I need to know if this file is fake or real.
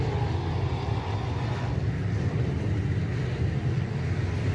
real